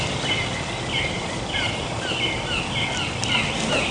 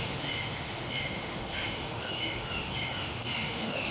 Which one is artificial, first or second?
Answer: second